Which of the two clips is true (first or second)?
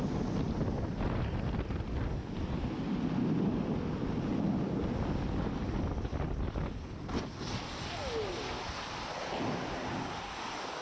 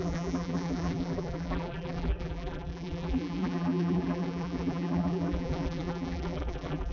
first